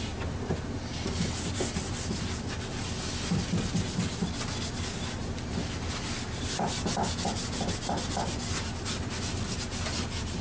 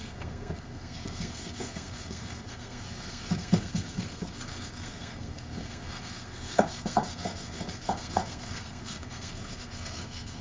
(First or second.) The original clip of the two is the first